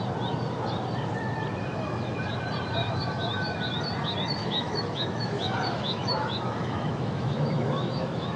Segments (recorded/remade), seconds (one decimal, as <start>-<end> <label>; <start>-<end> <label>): 0.0-1.7 recorded; 1.7-2.2 remade; 2.2-2.8 recorded; 2.8-3.6 remade; 3.6-4.4 recorded; 4.4-8.4 remade